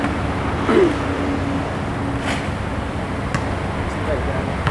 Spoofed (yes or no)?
no